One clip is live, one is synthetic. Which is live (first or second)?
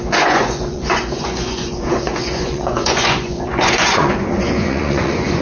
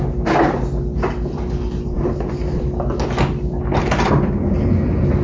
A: second